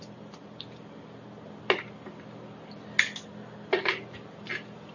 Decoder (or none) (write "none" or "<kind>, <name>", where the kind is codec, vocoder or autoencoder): none